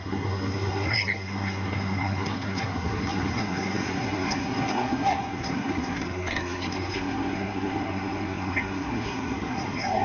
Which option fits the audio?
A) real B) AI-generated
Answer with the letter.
B